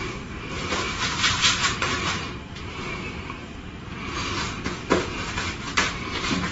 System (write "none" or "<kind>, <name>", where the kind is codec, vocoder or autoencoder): vocoder, BigVGAN v2